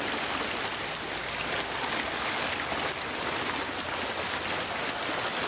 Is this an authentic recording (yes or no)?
yes